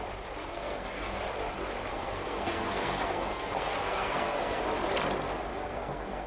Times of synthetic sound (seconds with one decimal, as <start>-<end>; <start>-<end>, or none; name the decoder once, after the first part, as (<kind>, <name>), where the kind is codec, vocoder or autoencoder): 0.4-1.2 (codec, SNAC); 1.9-4.6; 5.5-6.3